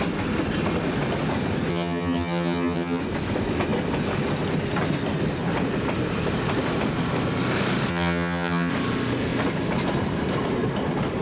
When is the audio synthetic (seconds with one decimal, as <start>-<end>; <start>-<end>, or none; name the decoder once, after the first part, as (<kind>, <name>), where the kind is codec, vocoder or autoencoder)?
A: 1.7-3.0 (vocoder, HiFi-GAN); 7.9-8.7